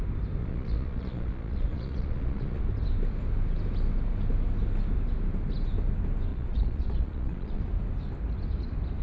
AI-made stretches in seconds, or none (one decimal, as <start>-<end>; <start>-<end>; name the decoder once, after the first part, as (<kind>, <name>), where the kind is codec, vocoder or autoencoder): 0.4-2.6 (vocoder, Vocos); 6.3-7.6